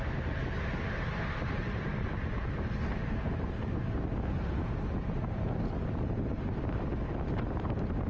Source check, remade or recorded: recorded